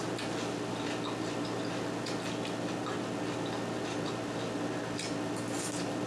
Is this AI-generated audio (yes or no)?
no